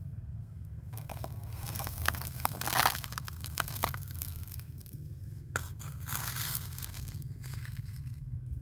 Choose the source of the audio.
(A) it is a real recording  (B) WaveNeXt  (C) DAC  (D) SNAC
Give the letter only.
D